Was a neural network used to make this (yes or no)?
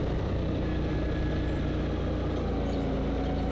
no